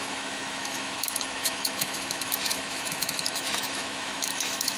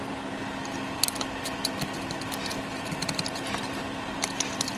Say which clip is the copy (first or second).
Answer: first